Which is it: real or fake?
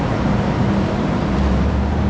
real